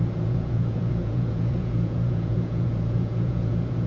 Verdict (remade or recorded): remade